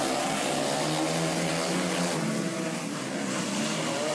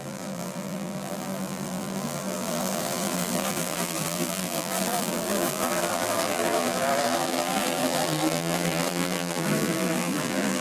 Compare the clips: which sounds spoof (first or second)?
second